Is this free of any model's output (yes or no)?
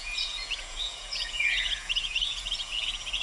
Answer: no